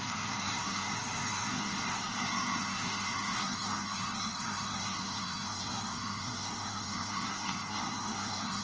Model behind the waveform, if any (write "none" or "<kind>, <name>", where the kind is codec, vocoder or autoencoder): codec, SNAC